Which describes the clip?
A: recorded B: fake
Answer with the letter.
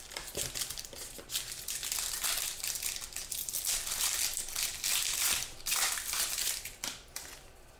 A